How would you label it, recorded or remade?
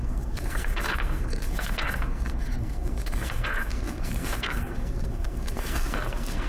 remade